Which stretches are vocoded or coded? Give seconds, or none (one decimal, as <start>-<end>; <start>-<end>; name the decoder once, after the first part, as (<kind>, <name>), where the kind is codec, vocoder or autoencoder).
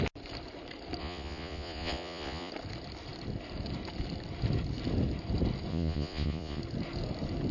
1.0-2.5 (vocoder, Vocos); 5.7-6.6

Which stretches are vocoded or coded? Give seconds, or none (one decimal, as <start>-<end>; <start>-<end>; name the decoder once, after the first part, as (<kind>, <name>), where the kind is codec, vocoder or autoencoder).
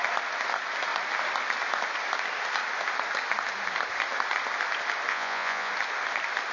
5.1-5.7 (vocoder, Vocos)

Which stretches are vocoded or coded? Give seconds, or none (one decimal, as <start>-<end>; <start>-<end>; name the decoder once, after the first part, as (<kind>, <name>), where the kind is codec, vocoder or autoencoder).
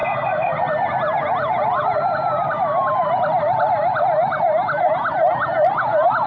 none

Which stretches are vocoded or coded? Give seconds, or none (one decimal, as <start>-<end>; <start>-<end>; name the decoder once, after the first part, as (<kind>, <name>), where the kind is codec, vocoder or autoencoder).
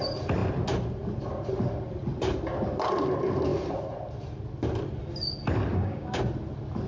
5.7-6.2 (codec, DAC)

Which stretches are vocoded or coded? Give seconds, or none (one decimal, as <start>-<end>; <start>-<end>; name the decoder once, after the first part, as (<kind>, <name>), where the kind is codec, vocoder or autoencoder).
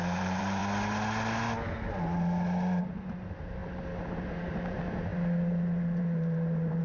0.0-0.6 (vocoder, BigVGAN v2); 2.8-6.8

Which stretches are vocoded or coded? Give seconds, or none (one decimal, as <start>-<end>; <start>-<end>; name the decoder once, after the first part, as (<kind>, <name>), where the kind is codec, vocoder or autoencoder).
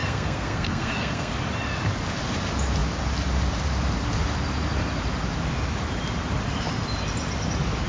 0.0-1.3 (codec, SNAC)